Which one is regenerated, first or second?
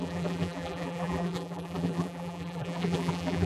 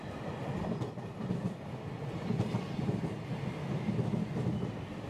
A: first